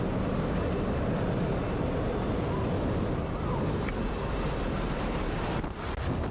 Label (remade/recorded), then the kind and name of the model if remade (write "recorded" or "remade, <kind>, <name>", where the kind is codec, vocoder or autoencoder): recorded